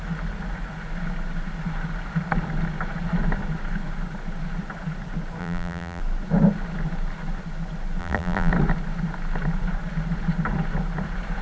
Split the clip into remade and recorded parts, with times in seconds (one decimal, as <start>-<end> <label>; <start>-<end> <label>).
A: 0.0-5.4 recorded; 5.4-6.0 remade; 6.0-8.0 recorded; 8.0-8.5 remade; 8.5-11.4 recorded